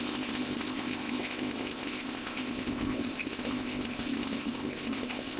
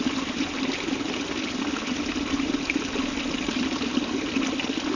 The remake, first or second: first